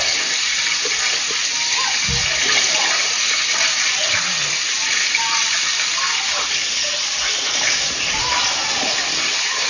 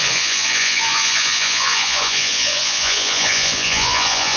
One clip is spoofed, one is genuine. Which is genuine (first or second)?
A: first